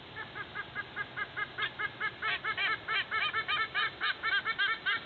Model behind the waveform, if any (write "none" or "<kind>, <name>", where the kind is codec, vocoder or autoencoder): none